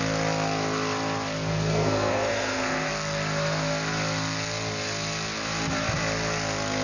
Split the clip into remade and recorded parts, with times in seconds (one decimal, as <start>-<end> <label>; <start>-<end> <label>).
0.0-1.5 recorded; 1.5-2.9 remade; 2.9-6.8 recorded